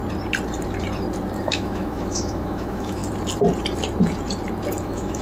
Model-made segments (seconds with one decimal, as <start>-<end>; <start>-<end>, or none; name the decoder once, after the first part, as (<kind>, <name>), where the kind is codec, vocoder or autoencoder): 1.4-3.0 (autoencoder, DAC-VAE); 4.8-5.2